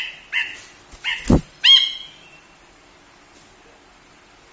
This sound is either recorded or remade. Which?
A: recorded